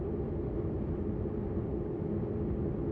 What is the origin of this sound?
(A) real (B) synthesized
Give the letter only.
A